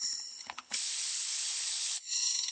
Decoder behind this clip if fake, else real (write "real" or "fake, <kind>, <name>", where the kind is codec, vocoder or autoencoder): fake, codec, HILCodec